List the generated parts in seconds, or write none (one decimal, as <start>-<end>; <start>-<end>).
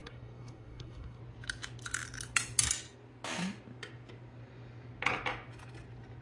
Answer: 0.0-1.2